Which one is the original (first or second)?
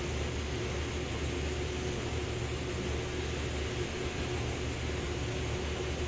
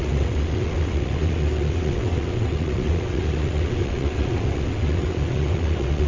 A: first